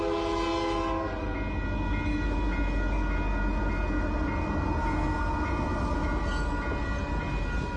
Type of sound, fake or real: real